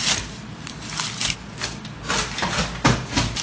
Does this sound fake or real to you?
real